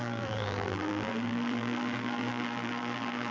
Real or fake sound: fake